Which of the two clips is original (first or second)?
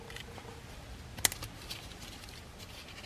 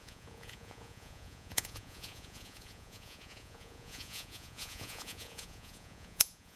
first